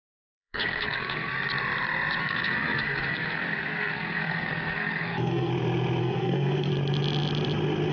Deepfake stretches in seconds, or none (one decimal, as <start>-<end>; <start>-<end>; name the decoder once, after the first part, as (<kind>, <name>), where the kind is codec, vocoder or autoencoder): 0.0-1.3 (codec, SNAC); 2.2-5.5; 6.0-6.7